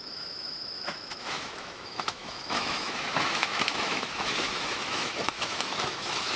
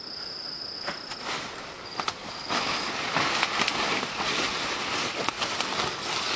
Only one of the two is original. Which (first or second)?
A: second